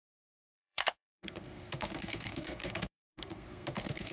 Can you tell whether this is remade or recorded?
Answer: remade